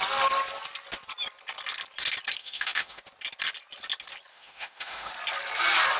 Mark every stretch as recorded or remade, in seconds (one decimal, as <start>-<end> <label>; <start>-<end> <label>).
0.0-2.4 recorded; 2.4-3.0 remade; 3.0-4.3 recorded; 4.3-5.1 remade; 5.1-6.0 recorded